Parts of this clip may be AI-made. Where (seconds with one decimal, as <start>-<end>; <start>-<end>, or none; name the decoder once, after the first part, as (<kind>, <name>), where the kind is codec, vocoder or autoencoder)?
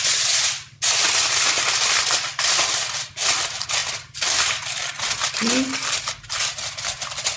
none